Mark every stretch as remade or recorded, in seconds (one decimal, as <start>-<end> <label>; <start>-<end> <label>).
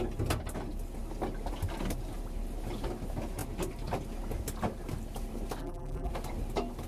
0.0-5.6 recorded; 5.6-6.1 remade; 6.1-6.9 recorded